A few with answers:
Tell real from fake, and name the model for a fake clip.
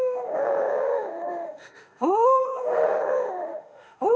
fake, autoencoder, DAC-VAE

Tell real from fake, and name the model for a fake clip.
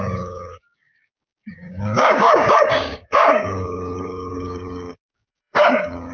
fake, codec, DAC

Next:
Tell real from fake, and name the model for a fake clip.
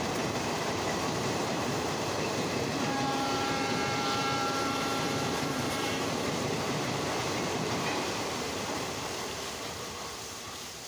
fake, vocoder, BigVGAN v2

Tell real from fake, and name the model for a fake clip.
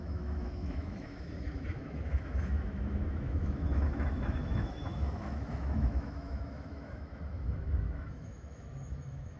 fake, autoencoder, DAC-VAE